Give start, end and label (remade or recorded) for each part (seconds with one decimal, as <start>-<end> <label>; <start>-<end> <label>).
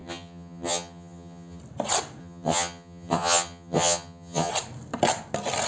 0.0-1.6 remade; 1.6-2.2 recorded; 2.2-4.5 remade; 4.5-5.7 recorded